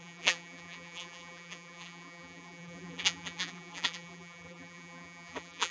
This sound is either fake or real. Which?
fake